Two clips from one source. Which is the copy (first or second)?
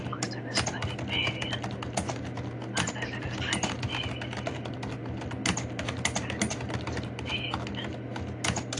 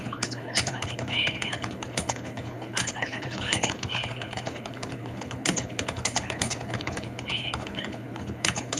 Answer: second